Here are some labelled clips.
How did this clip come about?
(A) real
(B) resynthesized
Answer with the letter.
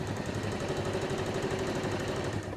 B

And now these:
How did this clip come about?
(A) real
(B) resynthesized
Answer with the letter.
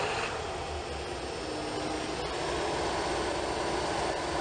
A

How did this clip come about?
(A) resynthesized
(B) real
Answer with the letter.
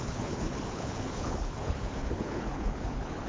A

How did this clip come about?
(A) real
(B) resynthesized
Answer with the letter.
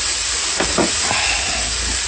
A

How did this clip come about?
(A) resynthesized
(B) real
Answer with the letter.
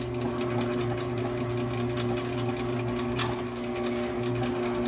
B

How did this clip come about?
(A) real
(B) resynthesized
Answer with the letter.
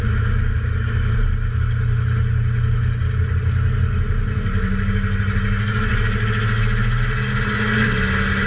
A